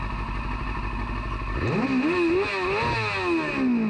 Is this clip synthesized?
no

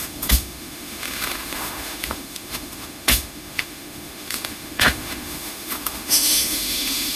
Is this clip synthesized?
yes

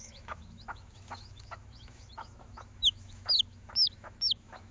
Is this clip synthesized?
yes